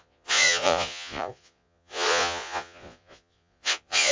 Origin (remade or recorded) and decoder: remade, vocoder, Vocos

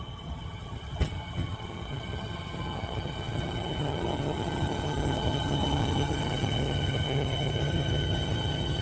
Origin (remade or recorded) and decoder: remade, vocoder, HiFi-GAN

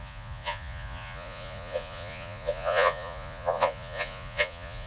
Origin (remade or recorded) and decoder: remade, vocoder, Vocos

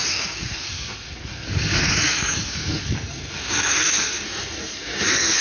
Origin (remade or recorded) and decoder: remade, codec, SNAC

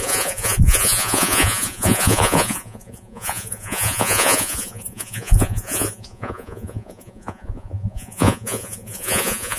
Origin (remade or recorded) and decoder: remade, vocoder, Vocos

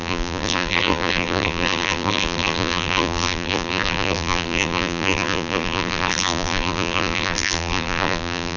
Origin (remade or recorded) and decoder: remade, vocoder, BigVGAN v2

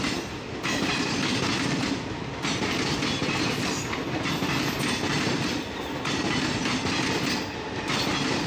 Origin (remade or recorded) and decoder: recorded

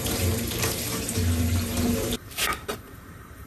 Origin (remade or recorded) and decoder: remade, vocoder, BigVGAN v2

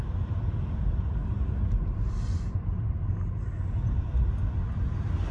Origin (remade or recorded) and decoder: recorded